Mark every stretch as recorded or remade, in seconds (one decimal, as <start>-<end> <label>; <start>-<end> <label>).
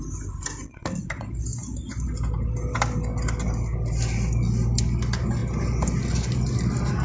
0.0-7.0 recorded